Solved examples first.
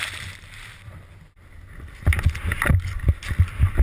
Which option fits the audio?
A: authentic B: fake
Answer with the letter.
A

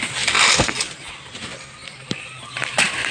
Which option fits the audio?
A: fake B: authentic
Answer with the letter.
A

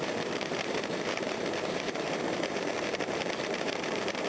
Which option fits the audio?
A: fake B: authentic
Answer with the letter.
A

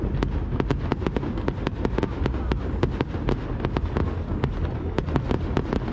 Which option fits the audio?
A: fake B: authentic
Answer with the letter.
B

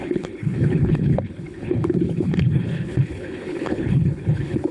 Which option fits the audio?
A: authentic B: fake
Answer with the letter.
B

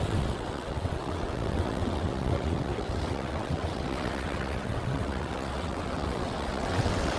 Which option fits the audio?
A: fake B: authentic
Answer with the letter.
A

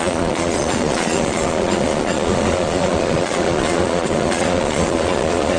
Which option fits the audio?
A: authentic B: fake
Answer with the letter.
B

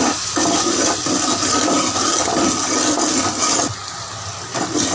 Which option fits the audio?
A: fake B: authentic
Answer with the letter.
B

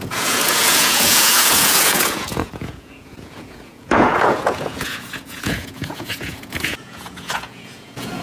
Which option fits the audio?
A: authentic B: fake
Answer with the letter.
B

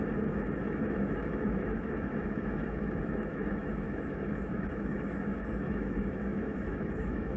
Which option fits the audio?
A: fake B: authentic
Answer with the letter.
A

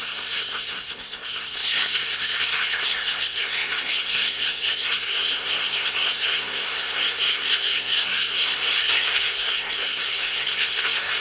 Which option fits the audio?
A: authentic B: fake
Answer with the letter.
B